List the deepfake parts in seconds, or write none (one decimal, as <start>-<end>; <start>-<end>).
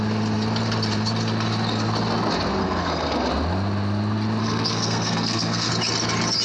2.6-3.3; 4.4-5.7